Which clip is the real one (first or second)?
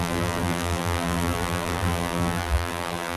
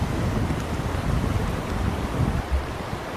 second